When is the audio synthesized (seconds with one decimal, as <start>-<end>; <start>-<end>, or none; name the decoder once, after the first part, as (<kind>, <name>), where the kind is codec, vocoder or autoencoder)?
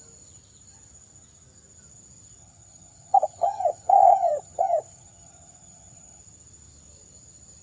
2.4-6.2 (vocoder, HiFi-GAN)